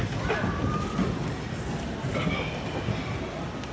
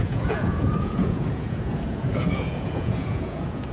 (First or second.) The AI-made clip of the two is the second